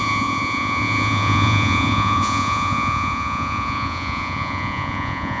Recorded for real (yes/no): no